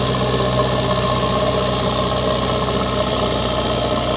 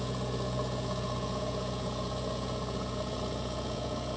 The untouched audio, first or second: first